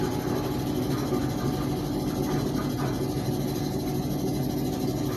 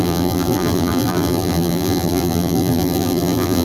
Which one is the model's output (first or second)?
second